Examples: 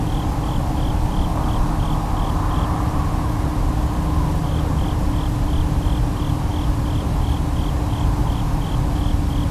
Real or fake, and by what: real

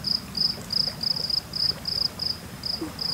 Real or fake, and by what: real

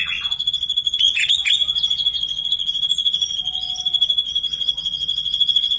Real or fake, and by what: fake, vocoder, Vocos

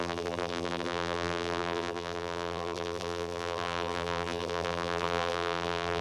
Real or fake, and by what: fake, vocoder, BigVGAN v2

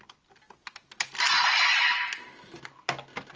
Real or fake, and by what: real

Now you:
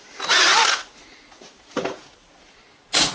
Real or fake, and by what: real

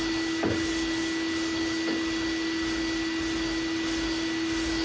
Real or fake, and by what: real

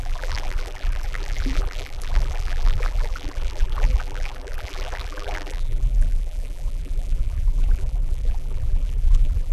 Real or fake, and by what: fake, vocoder, BigVGAN v2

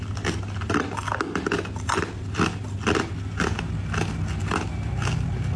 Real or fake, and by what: real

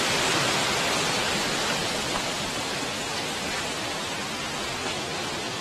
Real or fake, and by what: real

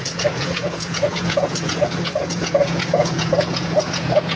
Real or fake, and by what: fake, vocoder, Vocos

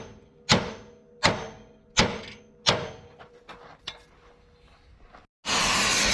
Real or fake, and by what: real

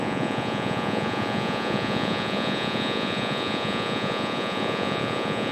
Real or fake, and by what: fake, vocoder, Vocos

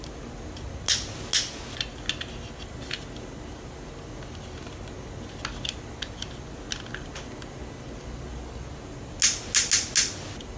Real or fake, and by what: real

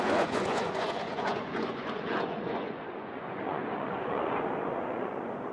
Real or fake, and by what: fake, vocoder, Vocos